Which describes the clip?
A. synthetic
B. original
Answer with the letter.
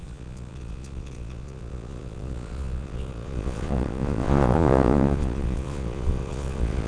A